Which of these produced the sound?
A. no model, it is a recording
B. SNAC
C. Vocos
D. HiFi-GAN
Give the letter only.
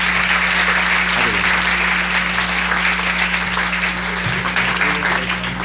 A